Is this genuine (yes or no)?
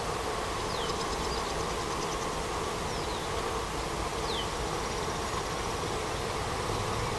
yes